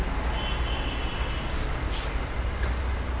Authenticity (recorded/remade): recorded